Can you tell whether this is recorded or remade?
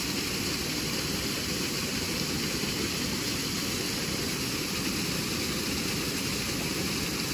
recorded